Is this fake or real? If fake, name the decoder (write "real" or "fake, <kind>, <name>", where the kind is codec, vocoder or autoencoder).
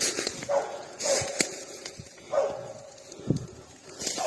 fake, vocoder, Vocos